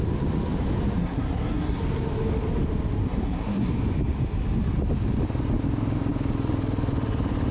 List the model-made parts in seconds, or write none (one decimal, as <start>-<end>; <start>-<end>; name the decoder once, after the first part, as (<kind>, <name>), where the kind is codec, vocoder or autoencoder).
1.0-1.8 (codec, SNAC); 3.0-3.7